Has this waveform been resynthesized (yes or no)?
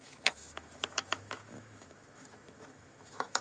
yes